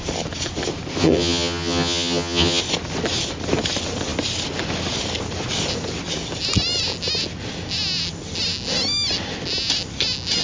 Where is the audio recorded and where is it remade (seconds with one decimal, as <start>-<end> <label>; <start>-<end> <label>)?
0.0-1.0 recorded; 1.0-2.6 remade; 2.6-10.4 recorded